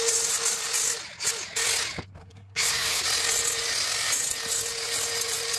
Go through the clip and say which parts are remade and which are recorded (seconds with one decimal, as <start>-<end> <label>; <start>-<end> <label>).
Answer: 0.0-2.2 recorded; 2.2-3.0 remade; 3.0-5.6 recorded